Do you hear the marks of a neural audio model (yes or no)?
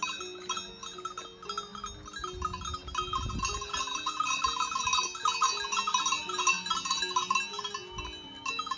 no